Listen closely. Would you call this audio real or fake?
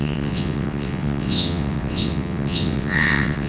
fake